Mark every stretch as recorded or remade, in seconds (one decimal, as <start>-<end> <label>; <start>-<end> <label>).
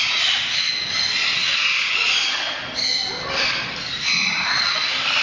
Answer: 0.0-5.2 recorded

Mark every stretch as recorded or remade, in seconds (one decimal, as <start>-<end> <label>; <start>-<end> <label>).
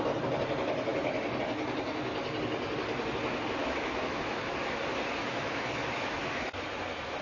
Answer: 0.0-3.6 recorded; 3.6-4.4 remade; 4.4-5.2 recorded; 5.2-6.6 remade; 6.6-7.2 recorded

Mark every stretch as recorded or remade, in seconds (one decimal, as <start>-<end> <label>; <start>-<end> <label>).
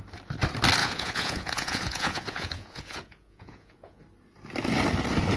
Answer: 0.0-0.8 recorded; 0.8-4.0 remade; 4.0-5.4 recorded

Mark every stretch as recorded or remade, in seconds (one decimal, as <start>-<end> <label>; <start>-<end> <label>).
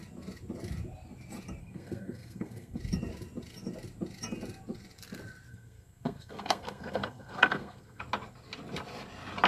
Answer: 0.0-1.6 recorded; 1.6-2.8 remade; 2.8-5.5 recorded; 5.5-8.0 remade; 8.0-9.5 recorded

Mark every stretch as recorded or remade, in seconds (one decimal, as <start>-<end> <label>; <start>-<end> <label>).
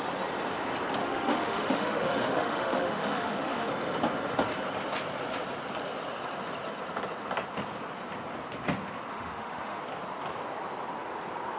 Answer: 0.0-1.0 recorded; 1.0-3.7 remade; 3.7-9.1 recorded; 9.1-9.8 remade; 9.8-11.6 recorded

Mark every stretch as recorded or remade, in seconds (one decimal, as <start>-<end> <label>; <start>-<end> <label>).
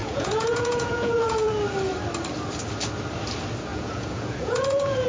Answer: 0.0-1.5 remade; 1.5-3.7 recorded; 3.7-5.1 remade